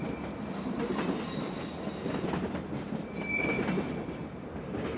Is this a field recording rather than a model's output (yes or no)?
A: yes